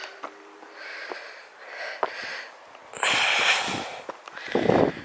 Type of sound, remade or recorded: recorded